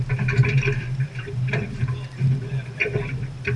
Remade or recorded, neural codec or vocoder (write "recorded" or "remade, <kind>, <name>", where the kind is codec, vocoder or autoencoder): remade, vocoder, BigVGAN v2